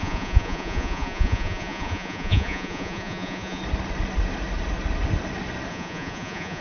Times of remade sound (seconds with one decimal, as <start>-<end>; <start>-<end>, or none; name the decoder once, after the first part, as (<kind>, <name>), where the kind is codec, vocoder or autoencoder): 0.0-3.6 (vocoder, Vocos); 5.7-6.6